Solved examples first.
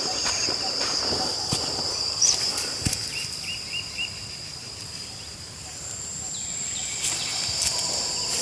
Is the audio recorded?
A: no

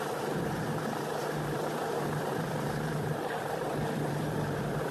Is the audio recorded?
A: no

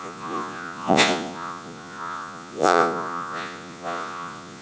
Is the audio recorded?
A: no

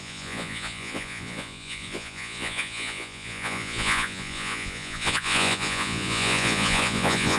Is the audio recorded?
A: no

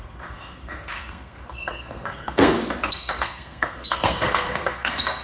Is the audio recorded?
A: no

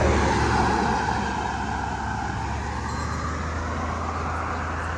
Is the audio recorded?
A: yes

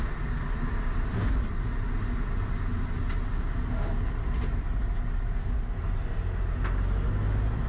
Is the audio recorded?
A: yes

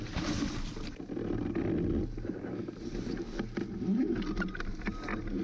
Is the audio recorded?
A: yes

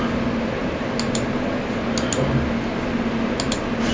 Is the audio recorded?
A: yes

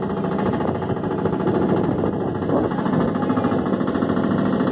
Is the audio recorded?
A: yes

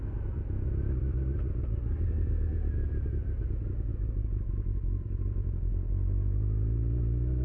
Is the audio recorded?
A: yes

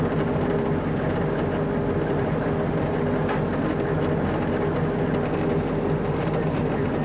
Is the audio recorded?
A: yes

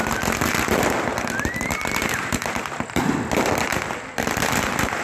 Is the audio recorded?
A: no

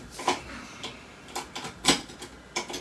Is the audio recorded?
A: yes